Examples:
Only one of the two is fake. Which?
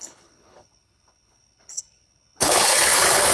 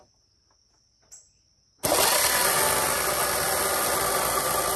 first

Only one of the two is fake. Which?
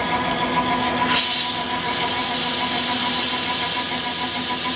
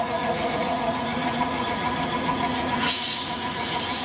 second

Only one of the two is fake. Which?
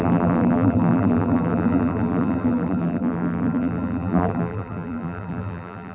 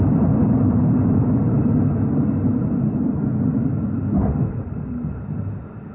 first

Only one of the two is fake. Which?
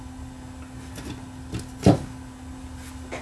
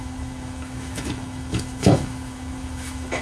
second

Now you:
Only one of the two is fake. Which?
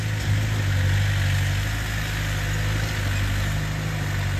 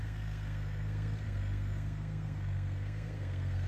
second